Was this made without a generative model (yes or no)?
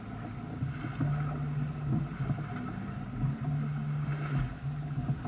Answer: yes